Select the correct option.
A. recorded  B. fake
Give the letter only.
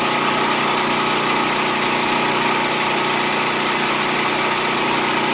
A